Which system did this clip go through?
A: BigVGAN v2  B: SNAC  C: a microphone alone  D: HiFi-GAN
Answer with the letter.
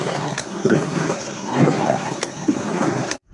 B